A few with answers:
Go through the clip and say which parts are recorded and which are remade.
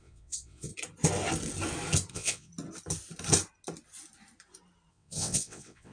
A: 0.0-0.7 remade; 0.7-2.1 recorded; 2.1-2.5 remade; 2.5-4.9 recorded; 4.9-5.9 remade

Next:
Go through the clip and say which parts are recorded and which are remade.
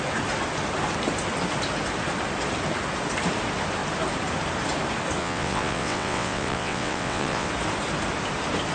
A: 0.0-5.2 recorded; 5.2-7.5 remade; 7.5-8.7 recorded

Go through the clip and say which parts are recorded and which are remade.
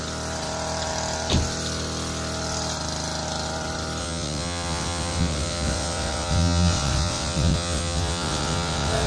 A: 0.0-4.0 recorded; 4.0-9.1 remade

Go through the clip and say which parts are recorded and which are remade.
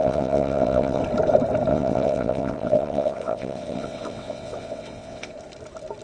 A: 0.0-1.0 remade; 1.0-1.7 recorded; 1.7-5.3 remade; 5.3-6.0 recorded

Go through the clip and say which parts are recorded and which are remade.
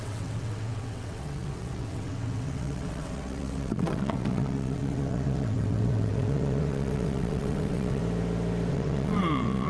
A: 0.0-8.0 remade; 8.0-8.7 recorded; 8.7-9.7 remade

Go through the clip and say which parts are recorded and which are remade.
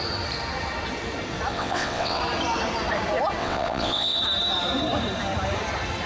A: 0.0-1.5 recorded; 1.5-2.2 remade; 2.2-3.4 recorded; 3.4-4.2 remade; 4.2-6.1 recorded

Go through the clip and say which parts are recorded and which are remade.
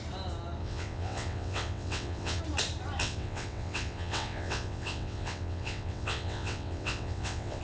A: 0.0-0.6 recorded; 0.6-2.4 remade; 2.4-3.0 recorded; 3.0-7.6 remade